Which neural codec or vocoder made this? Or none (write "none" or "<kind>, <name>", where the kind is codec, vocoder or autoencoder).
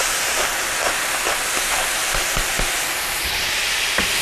none